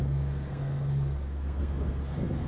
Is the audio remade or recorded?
remade